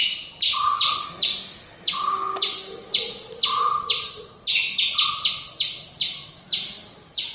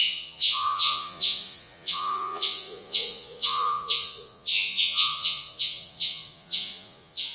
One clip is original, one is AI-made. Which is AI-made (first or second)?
second